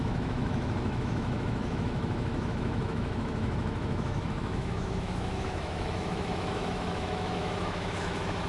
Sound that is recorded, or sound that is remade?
remade